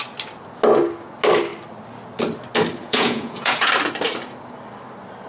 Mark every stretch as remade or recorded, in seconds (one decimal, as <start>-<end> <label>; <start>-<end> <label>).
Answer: 0.0-2.8 recorded; 2.8-3.7 remade; 3.7-5.3 recorded